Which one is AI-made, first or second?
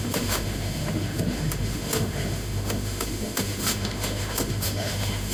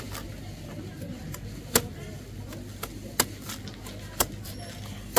first